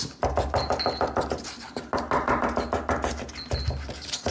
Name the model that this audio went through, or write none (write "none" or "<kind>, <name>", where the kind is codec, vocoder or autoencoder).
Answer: none